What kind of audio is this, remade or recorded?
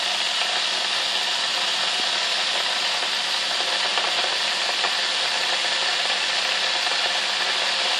recorded